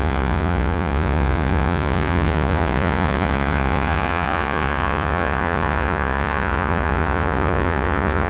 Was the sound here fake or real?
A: fake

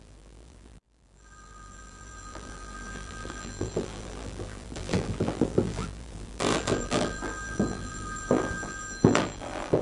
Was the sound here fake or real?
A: fake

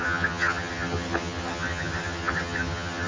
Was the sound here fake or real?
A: fake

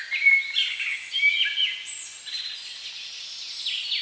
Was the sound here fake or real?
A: real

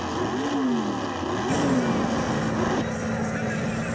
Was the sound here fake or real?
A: real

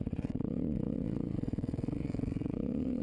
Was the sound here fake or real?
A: fake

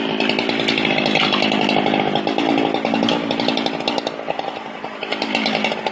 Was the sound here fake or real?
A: real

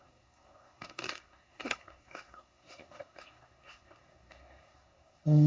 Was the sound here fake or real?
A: fake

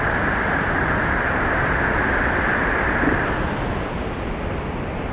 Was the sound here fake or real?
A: real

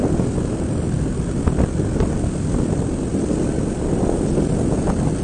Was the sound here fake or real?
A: real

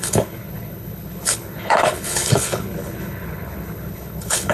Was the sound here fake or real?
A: fake